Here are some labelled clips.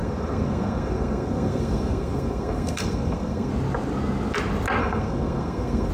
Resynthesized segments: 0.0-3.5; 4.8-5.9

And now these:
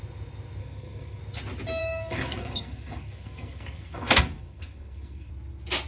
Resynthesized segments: 0.6-1.2; 1.8-5.3